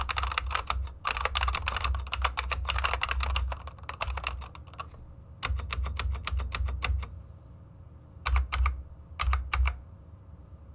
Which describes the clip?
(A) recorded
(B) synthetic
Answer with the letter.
A